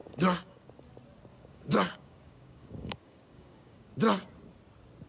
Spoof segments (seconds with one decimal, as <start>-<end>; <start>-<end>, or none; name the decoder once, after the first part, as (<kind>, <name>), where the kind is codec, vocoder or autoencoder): 0.0-0.7 (codec, DAC); 1.3-3.9